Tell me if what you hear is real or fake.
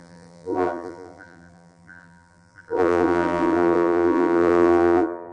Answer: fake